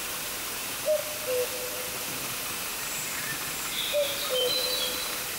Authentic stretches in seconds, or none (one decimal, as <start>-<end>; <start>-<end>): 1.0-2.0